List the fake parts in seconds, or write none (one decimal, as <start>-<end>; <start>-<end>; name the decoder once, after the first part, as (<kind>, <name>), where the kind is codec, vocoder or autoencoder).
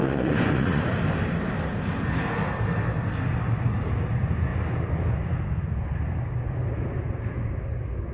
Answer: 0.0-0.8 (vocoder, Vocos)